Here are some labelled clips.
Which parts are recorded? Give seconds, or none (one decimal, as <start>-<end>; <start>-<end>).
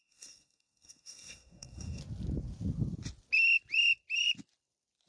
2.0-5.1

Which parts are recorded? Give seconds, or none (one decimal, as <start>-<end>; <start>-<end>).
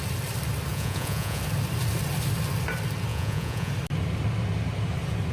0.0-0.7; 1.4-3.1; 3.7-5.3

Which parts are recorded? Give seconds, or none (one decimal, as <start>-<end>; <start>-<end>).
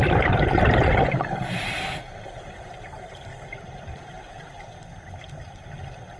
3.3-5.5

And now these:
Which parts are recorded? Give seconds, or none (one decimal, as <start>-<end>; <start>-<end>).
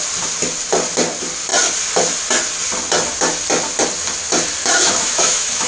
0.0-4.6